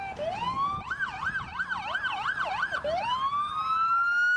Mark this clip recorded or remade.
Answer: recorded